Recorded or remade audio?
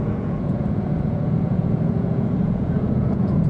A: remade